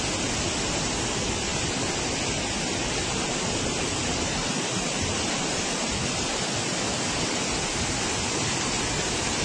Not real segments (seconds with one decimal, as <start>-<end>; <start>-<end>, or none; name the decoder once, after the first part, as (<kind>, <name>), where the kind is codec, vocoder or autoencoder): 4.0-4.9 (vocoder, BigVGAN v2)